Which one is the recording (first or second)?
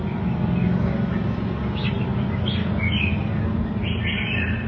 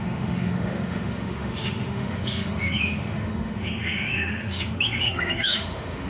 first